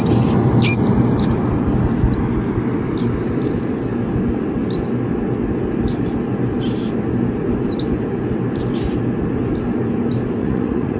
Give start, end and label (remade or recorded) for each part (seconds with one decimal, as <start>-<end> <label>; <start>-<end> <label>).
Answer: 0.0-10.4 recorded; 10.4-11.0 remade